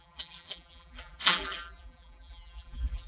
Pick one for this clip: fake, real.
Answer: fake